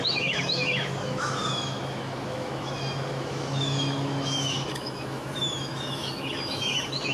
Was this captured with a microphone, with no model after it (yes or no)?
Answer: no